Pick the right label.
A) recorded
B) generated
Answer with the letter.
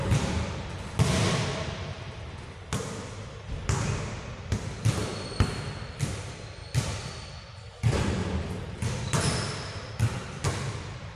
B